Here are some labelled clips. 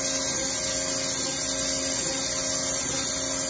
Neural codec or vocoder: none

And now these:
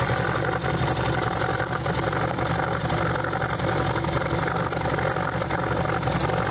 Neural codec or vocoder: none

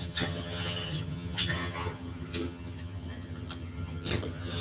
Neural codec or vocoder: vocoder, HiFi-GAN